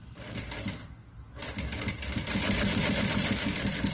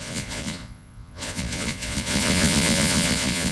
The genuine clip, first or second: first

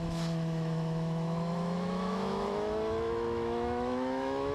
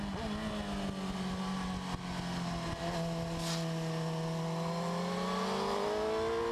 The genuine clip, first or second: second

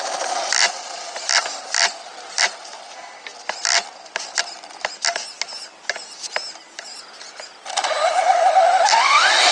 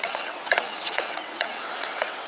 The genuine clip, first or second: first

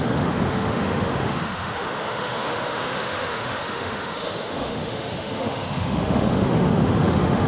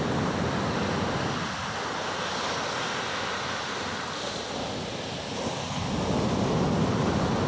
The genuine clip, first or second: second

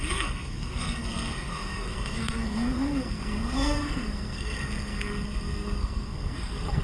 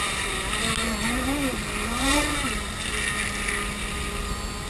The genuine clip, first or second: second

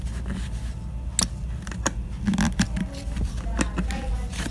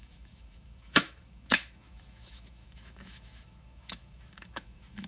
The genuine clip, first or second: first